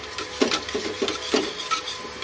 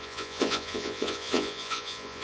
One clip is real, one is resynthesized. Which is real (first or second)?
first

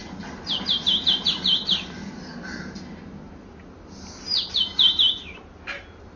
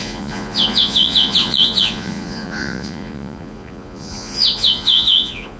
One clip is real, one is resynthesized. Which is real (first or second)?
first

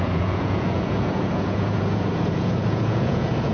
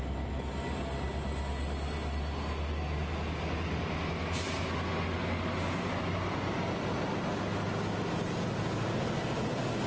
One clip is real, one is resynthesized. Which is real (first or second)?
second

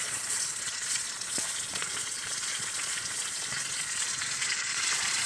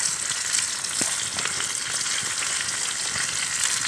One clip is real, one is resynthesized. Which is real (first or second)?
second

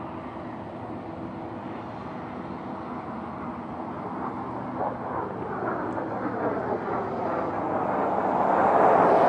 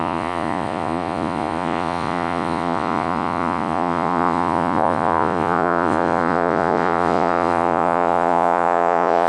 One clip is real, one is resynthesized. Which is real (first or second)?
first